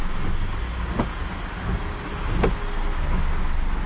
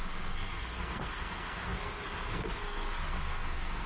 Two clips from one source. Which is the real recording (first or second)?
first